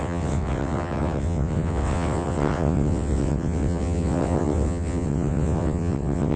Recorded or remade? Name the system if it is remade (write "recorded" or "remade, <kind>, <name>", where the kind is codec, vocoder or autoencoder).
remade, vocoder, WaveNeXt